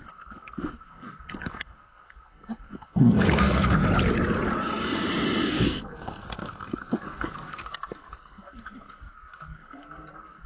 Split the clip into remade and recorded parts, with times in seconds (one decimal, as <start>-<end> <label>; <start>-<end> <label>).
0.0-3.8 remade; 3.8-5.5 recorded; 5.5-10.5 remade